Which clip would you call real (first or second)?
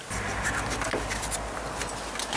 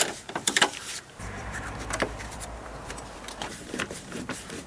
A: first